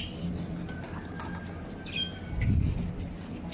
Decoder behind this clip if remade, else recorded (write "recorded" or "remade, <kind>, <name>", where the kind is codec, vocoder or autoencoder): recorded